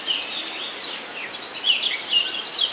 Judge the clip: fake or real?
real